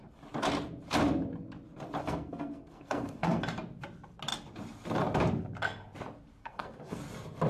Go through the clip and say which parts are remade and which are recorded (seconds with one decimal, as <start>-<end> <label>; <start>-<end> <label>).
0.0-2.0 recorded; 2.0-3.4 remade; 3.4-6.4 recorded; 6.4-7.0 remade; 7.0-7.5 recorded